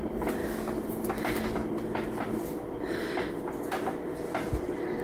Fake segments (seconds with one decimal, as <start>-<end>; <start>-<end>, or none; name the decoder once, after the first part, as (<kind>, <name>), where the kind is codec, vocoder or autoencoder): none